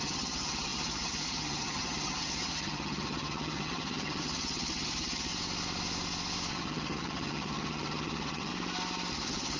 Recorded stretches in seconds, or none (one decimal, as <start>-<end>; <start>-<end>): 5.3-6.5; 8.5-9.1